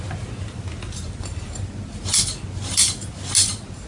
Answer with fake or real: real